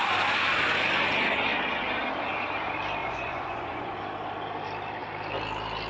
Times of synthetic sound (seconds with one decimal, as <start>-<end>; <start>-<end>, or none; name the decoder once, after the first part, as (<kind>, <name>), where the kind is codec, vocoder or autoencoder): 3.0-3.9 (vocoder, Vocos)